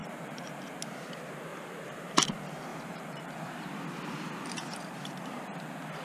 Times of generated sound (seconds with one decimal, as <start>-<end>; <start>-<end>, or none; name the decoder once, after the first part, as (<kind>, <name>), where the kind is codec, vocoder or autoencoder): 0.0-0.5 (vocoder, BigVGAN v2); 1.5-2.1; 2.7-3.7